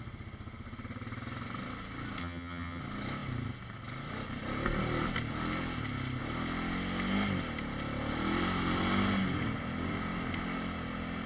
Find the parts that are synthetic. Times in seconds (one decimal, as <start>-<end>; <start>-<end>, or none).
2.2-2.8